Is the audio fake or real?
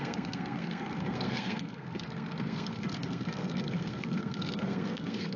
fake